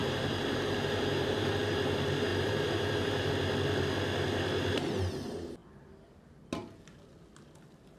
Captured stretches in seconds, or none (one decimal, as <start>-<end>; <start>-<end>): 1.8-2.3; 3.3-8.0